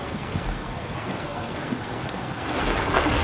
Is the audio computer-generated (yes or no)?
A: yes